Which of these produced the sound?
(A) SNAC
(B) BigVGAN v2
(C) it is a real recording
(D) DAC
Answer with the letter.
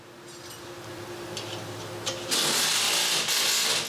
C